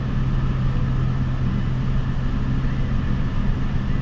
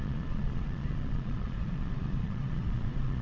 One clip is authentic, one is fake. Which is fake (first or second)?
second